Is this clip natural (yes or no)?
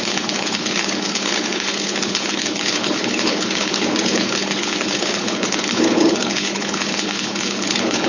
no